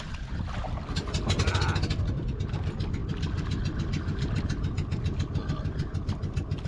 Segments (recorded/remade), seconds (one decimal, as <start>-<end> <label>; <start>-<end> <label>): 0.0-6.7 recorded